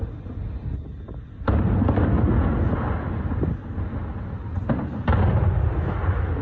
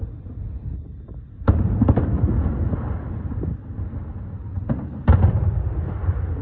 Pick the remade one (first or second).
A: second